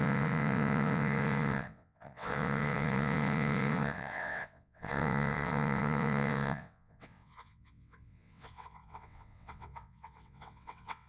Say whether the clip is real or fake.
fake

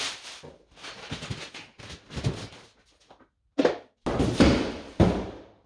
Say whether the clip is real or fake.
real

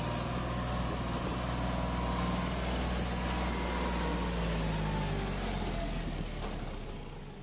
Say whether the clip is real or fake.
real